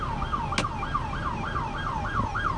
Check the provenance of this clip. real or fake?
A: real